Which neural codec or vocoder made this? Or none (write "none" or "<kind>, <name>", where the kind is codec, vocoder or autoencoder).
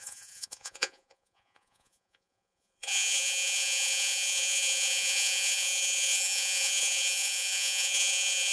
vocoder, Vocos